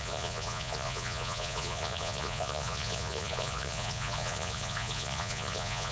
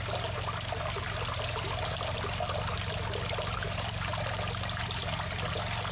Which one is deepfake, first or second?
first